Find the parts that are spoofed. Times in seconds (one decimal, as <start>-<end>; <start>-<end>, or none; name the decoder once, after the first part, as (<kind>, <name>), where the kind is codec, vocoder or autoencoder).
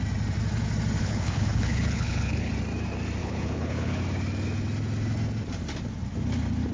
1.0-2.5 (codec, HILCodec); 3.2-4.0